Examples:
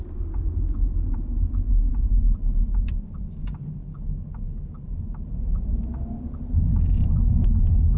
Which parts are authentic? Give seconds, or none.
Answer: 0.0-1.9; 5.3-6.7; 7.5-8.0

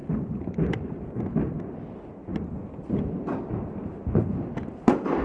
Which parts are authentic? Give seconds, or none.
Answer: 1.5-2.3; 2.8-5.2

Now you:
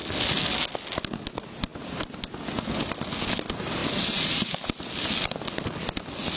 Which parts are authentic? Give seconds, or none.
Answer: 0.0-6.4

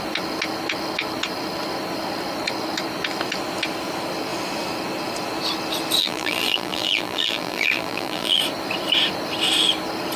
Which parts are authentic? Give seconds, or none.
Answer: 0.0-6.0; 8.4-10.2

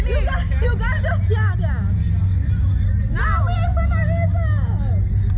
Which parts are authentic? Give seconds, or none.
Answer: 0.0-5.4

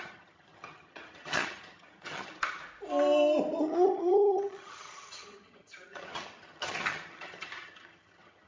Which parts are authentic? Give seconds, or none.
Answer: 2.6-3.6

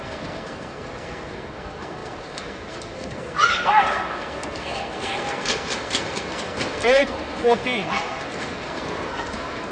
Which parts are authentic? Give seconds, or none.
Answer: none

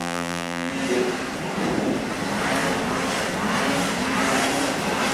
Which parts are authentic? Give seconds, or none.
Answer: 0.7-5.1